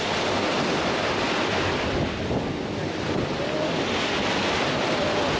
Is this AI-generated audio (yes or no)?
yes